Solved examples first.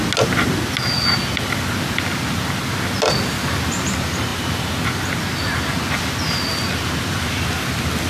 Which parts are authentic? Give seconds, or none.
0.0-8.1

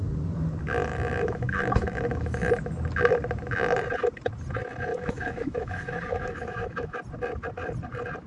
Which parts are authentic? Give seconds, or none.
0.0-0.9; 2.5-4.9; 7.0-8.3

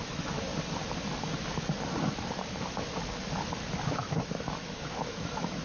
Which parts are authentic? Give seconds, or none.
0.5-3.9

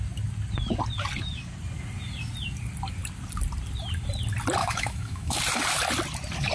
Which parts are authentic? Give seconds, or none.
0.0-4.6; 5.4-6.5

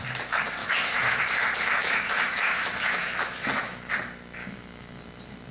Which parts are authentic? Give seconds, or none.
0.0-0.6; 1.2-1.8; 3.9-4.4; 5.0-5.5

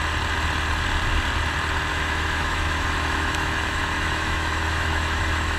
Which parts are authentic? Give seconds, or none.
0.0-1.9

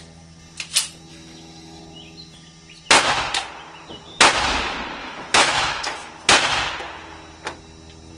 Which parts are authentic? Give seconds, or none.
0.0-1.1; 1.8-5.0; 6.1-8.2